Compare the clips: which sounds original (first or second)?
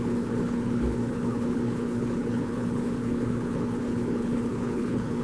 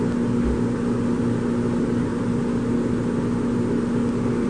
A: second